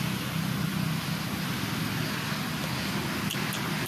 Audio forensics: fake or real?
real